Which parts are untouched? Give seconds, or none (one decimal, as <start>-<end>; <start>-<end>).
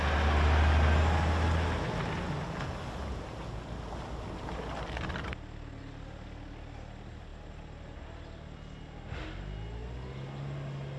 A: 0.0-11.0